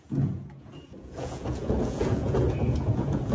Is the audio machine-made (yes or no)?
yes